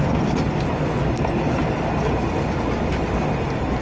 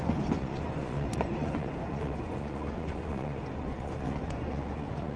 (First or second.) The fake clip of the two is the second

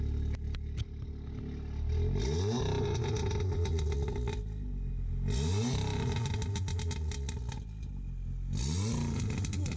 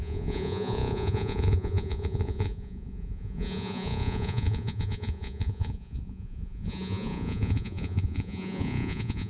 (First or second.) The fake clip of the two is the second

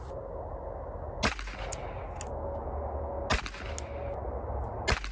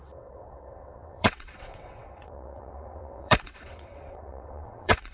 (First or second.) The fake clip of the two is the second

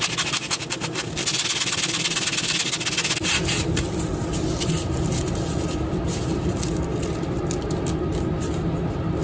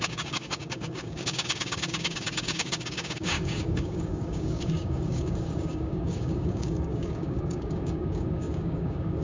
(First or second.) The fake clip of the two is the second